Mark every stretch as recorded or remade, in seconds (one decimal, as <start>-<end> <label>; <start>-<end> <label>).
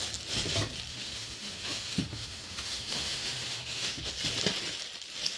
0.0-0.9 recorded; 0.9-4.1 remade; 4.1-5.4 recorded